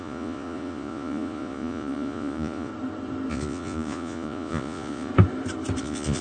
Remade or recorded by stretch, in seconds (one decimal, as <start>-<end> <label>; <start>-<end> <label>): 0.0-2.7 remade; 2.7-3.3 recorded; 3.3-5.1 remade; 5.1-5.8 recorded; 5.8-6.2 remade